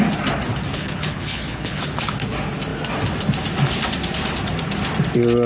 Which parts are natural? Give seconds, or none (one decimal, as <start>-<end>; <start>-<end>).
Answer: 0.0-0.7; 1.8-5.5